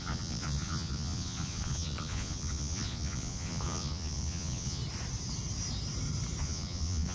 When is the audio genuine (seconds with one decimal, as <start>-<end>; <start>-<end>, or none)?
4.8-6.4